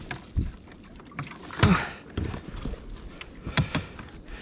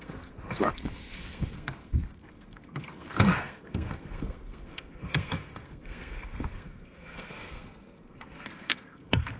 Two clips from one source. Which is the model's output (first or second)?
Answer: second